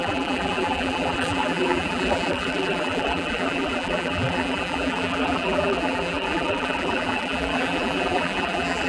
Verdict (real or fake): fake